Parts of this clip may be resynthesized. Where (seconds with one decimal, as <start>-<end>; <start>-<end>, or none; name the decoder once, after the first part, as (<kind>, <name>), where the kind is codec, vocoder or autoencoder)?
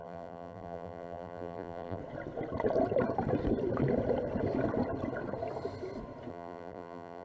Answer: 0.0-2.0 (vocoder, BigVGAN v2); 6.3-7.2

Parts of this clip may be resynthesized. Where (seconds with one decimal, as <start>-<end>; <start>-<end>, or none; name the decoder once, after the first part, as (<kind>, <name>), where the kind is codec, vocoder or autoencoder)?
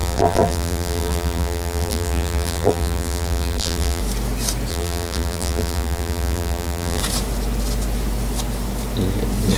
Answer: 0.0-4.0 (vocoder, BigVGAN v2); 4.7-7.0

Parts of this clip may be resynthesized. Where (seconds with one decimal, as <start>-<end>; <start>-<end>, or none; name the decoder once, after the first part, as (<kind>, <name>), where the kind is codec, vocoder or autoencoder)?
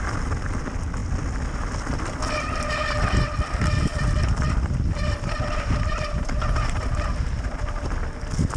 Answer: 3.9-7.8 (vocoder, BigVGAN v2)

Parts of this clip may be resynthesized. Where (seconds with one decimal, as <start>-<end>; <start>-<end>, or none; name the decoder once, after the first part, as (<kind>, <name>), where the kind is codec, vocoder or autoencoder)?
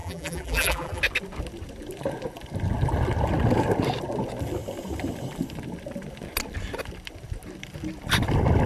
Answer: 0.0-1.0 (vocoder, BigVGAN v2)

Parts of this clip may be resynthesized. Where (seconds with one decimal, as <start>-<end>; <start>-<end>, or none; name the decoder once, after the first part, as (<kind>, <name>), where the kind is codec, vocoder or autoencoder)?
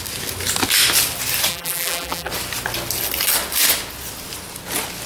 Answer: 1.5-2.3 (vocoder, BigVGAN v2)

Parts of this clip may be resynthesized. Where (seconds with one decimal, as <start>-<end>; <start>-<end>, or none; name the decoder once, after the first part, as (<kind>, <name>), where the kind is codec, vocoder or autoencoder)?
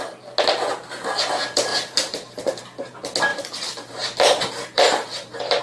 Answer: 1.7-2.6 (vocoder, BigVGAN v2); 3.3-5.6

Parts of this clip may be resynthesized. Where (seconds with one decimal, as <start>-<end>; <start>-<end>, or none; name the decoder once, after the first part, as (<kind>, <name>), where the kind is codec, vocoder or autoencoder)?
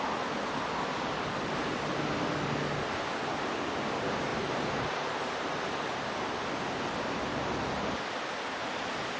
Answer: 4.3-6.1 (vocoder, BigVGAN v2)